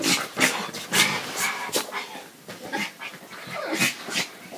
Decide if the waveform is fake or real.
real